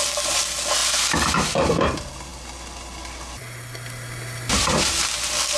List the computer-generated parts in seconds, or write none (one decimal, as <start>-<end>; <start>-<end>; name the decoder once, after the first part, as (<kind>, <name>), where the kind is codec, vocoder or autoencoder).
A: none